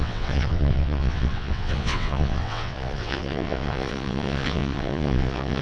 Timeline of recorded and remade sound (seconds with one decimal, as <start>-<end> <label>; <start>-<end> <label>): 0.0-5.6 remade

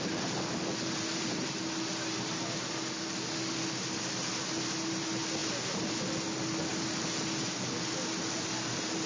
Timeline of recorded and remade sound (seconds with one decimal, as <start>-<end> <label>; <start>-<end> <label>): 0.0-9.1 recorded

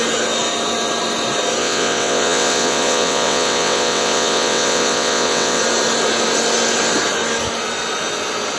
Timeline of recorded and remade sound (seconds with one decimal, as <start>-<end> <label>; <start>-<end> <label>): 0.0-1.6 recorded; 1.6-5.6 remade; 5.6-8.6 recorded

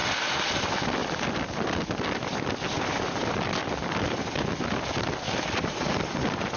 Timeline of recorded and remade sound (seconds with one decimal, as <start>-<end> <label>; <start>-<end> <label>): 0.0-6.6 recorded

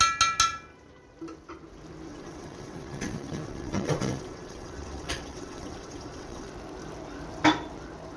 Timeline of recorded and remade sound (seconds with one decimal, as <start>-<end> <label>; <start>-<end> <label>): 0.0-2.1 recorded; 2.1-6.5 remade; 6.5-8.2 recorded